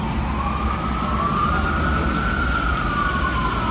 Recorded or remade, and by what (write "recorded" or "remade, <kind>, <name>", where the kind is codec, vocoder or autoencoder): recorded